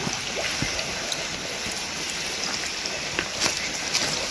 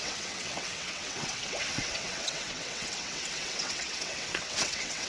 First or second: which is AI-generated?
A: second